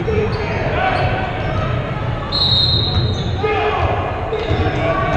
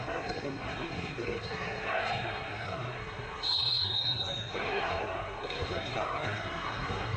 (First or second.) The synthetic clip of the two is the second